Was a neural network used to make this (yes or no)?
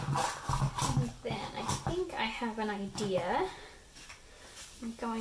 no